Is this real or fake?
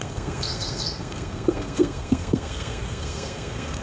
fake